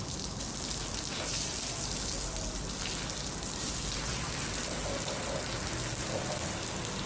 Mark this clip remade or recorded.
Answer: recorded